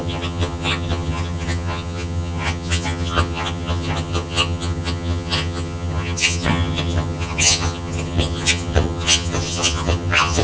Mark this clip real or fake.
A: fake